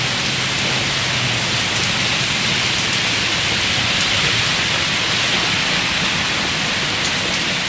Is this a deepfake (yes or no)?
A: no